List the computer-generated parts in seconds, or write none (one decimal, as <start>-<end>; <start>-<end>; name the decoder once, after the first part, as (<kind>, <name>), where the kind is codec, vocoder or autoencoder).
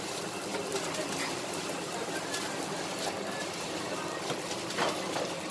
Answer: none